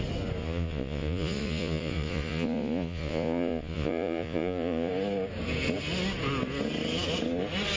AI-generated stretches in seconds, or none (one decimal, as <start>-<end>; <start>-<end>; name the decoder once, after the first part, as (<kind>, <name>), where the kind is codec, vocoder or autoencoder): 0.4-4.9 (vocoder, Vocos)